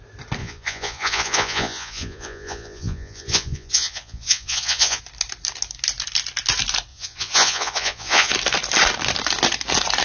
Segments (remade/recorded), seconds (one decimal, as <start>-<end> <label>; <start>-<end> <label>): 0.0-0.4 recorded; 0.4-5.0 remade; 5.0-6.9 recorded; 6.9-8.3 remade; 8.3-10.0 recorded